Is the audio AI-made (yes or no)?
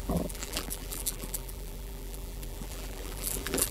yes